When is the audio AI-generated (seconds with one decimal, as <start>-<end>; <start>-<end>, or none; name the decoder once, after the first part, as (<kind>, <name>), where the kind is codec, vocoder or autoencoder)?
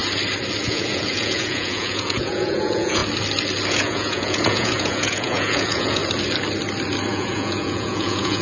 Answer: 0.6-3.0 (vocoder, Vocos); 3.7-6.0; 7.1-8.4